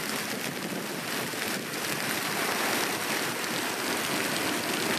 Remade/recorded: recorded